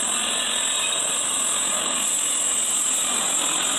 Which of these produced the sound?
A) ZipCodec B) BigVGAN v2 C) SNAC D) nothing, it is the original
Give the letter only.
D